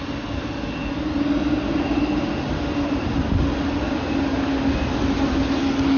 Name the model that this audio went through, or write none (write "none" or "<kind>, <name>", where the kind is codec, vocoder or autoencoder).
none